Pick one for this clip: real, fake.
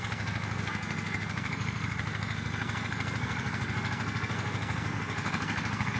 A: fake